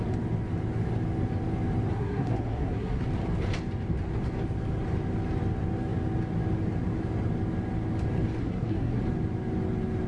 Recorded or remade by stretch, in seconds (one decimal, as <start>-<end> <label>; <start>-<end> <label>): 0.0-1.9 recorded; 1.9-3.0 remade; 3.0-8.4 recorded; 8.4-9.0 remade; 9.0-10.1 recorded